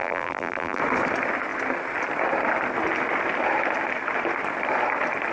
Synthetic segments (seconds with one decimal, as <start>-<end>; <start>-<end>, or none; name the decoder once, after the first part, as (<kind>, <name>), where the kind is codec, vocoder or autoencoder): 0.0-0.8 (vocoder, BigVGAN v2)